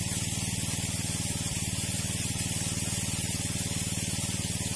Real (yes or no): yes